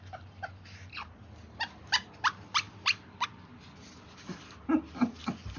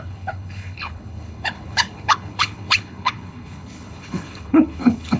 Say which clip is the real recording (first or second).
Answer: first